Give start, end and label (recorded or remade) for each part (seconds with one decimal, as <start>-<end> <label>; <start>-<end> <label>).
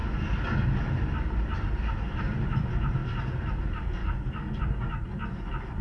0.0-4.0 recorded; 4.0-4.6 remade; 4.6-5.8 recorded